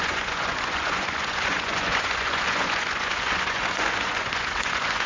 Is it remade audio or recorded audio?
remade